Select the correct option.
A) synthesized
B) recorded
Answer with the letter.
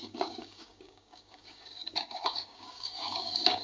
A